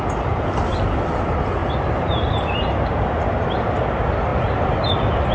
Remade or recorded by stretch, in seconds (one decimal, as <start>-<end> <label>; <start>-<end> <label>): 0.0-5.3 recorded